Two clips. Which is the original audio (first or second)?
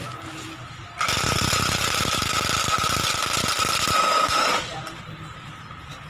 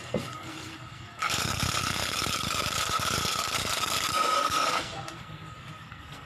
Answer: first